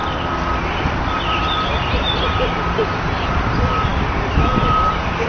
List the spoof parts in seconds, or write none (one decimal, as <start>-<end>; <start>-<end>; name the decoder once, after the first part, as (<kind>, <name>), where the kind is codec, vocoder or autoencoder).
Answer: 0.0-5.3 (vocoder, BigVGAN v2)